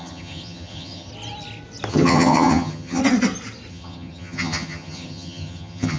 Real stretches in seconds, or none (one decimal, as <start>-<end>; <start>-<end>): 1.1-1.9; 3.0-3.7